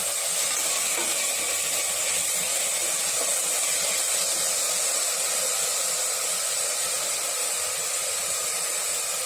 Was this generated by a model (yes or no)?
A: no